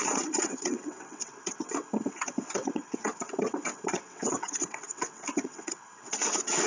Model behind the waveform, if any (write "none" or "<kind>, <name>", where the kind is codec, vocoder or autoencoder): vocoder, WaveNeXt